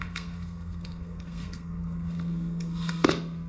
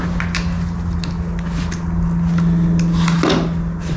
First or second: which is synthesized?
first